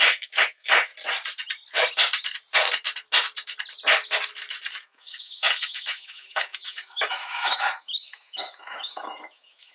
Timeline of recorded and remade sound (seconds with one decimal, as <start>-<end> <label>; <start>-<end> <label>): 0.0-0.9 remade; 0.9-4.7 recorded; 4.7-9.7 remade